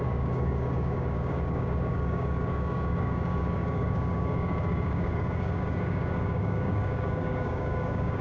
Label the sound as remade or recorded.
remade